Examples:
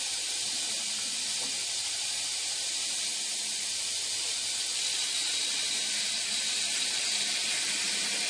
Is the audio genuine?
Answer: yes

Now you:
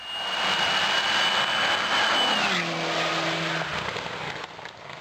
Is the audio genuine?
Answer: yes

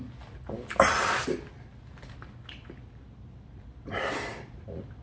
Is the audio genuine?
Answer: yes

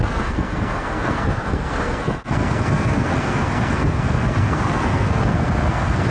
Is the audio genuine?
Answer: no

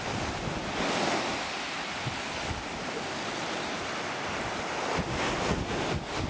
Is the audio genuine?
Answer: yes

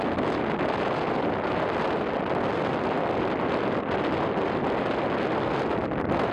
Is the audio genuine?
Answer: yes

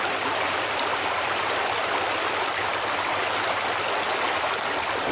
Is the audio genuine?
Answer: yes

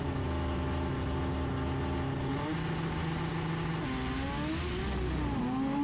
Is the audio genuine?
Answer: yes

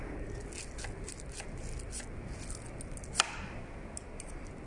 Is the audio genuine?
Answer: yes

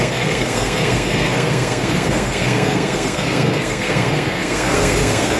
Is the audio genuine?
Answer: no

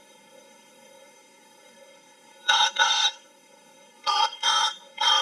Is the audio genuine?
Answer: no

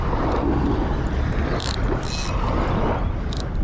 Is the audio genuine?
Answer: yes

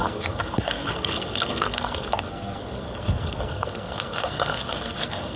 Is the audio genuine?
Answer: no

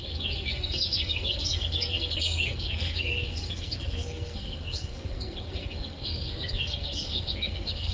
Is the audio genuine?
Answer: no